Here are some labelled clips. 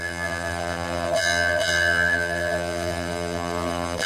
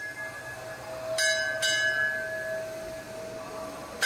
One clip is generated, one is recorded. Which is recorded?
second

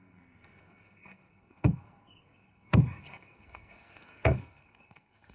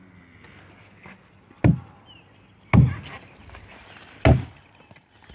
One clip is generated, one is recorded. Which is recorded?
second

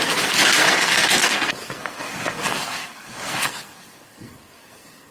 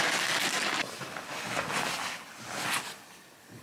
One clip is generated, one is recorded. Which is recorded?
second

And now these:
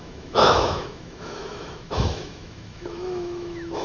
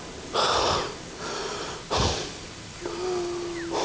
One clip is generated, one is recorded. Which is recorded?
second